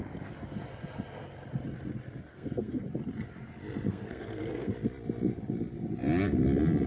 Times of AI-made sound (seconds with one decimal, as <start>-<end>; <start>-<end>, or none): 2.3-2.8; 3.9-4.7